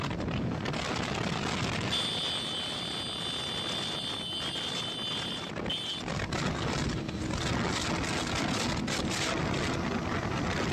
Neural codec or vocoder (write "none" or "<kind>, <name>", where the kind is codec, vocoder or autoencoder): none